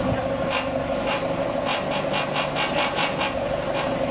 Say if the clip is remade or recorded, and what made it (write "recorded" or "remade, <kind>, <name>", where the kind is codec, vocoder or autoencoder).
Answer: recorded